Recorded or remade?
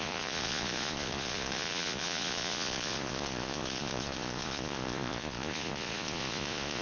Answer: remade